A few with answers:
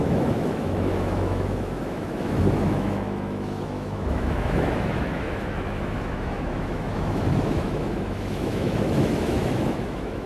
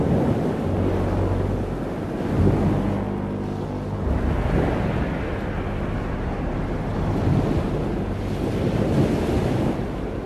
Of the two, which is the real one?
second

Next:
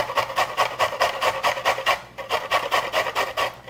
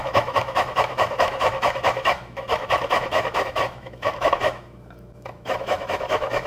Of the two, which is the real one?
first